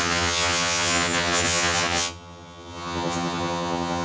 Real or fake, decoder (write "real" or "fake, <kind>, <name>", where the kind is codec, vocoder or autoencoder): fake, vocoder, HiFi-GAN